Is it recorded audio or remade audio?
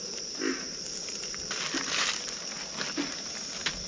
recorded